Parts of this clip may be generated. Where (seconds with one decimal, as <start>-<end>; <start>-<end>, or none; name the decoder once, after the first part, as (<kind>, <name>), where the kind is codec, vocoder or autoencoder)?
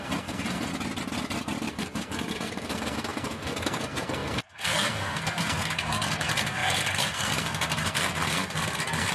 0.0-0.7 (codec, SNAC); 1.7-9.1